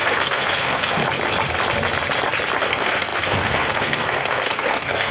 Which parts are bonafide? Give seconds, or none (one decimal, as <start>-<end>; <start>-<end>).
1.0-2.6